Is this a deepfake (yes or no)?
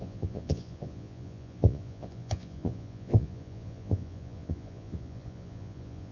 yes